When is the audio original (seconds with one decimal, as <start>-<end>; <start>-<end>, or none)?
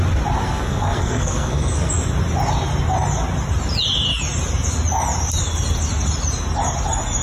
0.0-0.4; 1.9-7.2